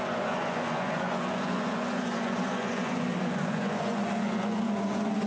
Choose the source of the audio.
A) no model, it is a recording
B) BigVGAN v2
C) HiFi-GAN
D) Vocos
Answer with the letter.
D